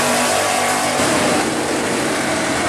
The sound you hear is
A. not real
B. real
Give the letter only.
A